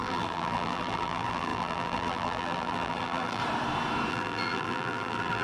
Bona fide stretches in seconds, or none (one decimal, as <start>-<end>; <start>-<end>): 3.4-4.1